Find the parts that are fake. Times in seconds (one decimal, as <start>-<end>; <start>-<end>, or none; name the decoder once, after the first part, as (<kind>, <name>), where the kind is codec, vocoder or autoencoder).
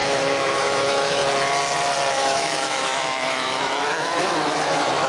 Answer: 0.0-1.2 (autoencoder, DAC-VAE); 2.1-5.1